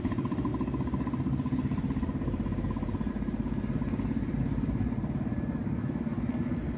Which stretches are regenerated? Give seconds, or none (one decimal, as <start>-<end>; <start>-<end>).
none